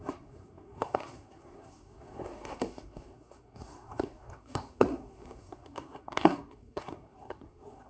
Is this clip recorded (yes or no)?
no